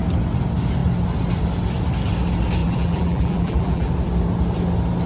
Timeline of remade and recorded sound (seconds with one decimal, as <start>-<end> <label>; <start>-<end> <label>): 0.0-2.6 recorded; 2.6-3.9 remade; 3.9-5.1 recorded

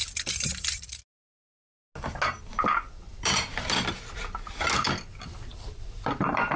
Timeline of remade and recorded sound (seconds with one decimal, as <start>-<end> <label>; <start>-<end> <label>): 0.0-1.0 remade; 1.0-3.1 recorded; 3.1-4.2 remade; 4.2-5.5 recorded; 5.5-6.6 remade

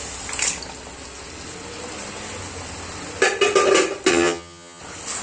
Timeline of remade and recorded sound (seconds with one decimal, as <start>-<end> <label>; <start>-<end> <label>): 0.0-4.1 recorded; 4.1-4.8 remade; 4.8-5.2 recorded

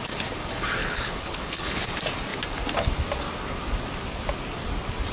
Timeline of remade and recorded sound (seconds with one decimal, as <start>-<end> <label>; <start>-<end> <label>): 0.0-0.8 recorded; 0.8-1.9 remade; 1.9-5.1 recorded

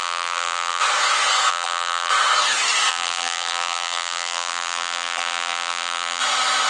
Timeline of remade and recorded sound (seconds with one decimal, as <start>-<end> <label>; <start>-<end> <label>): 0.0-0.8 remade; 0.8-1.5 recorded; 1.5-2.1 remade; 2.1-2.9 recorded; 2.9-6.2 remade; 6.2-6.7 recorded

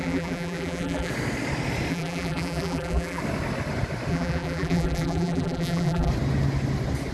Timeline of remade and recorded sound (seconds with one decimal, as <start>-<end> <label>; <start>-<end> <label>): 0.0-1.1 remade; 1.1-1.9 recorded; 1.9-3.2 remade; 3.2-4.1 recorded; 4.1-6.1 remade; 6.1-7.1 recorded

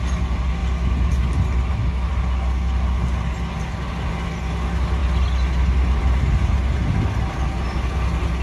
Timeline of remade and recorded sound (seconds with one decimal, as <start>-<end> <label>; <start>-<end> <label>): 0.0-8.4 recorded